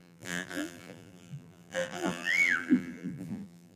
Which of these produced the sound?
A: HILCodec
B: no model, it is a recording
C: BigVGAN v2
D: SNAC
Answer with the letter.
C